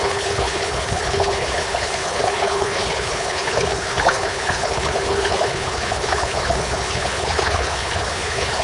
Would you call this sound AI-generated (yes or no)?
yes